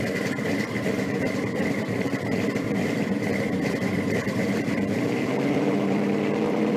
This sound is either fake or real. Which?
fake